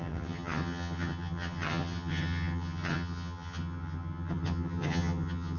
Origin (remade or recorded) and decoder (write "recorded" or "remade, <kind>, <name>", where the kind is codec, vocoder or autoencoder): remade, vocoder, HiFi-GAN